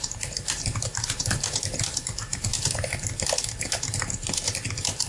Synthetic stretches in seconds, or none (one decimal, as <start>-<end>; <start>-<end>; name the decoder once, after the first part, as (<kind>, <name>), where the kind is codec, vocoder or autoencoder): none